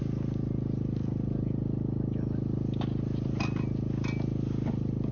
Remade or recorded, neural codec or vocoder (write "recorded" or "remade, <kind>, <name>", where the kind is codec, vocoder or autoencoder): recorded